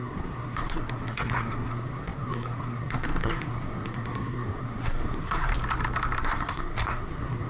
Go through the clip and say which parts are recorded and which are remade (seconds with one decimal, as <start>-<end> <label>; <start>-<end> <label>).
0.0-5.5 remade; 5.5-6.2 recorded; 6.2-7.5 remade